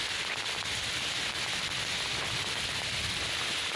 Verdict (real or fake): real